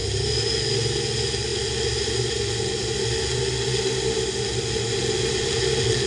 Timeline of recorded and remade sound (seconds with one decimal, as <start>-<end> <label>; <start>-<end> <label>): 0.0-0.5 recorded; 0.5-6.1 remade